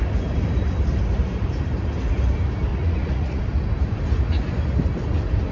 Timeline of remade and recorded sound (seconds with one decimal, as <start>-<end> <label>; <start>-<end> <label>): 0.0-2.7 recorded; 2.7-3.4 remade; 3.4-5.5 recorded

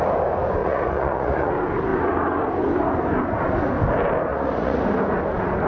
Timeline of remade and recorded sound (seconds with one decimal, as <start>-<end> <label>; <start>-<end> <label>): 0.0-0.6 recorded; 0.6-1.5 remade; 1.5-4.3 recorded; 4.3-4.8 remade; 4.8-5.7 recorded

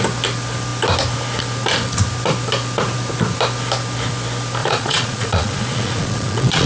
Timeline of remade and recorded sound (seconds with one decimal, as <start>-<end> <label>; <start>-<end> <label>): 0.0-4.6 recorded; 4.6-6.7 remade

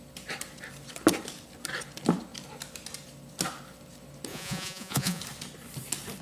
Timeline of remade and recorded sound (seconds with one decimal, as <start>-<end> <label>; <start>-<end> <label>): 0.0-4.3 recorded; 4.3-5.2 remade; 5.2-6.2 recorded

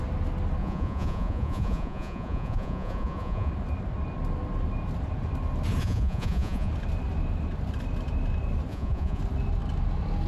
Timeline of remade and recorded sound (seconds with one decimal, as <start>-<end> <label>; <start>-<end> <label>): 0.0-0.6 recorded; 0.6-3.5 remade; 3.5-5.8 recorded; 5.8-6.7 remade; 6.7-8.7 recorded; 8.7-9.2 remade; 9.2-10.3 recorded

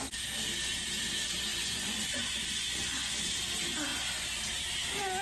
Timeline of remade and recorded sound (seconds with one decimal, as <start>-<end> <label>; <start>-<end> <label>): 0.0-1.5 recorded; 1.5-3.2 remade; 3.2-3.9 recorded; 3.9-4.4 remade; 4.4-5.2 recorded

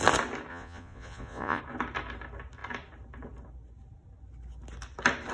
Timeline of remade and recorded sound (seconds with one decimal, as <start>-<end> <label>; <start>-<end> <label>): 0.0-0.5 recorded; 0.5-1.6 remade; 1.6-5.3 recorded

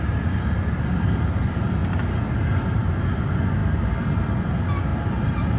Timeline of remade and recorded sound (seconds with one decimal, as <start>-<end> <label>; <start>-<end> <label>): 0.0-5.6 recorded